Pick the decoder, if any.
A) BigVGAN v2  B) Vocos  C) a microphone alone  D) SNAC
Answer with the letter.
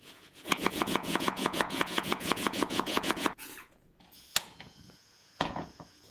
B